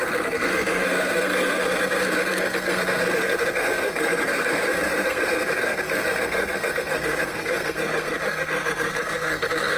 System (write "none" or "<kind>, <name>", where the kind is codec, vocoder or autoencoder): codec, SNAC